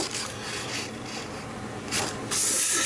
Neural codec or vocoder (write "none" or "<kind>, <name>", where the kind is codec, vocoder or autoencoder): none